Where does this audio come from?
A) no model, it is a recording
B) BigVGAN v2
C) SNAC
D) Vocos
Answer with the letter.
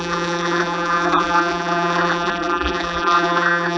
B